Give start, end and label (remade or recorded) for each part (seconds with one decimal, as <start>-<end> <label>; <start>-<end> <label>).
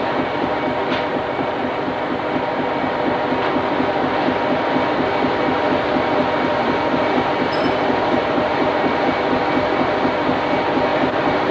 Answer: 0.0-1.1 recorded; 1.1-1.7 remade; 1.7-6.6 recorded; 6.6-9.0 remade; 9.0-10.9 recorded; 10.9-11.5 remade